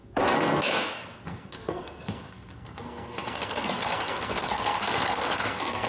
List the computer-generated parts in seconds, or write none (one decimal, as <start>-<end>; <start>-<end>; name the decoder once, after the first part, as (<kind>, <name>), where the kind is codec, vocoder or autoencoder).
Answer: 0.0-5.9 (codec, SNAC)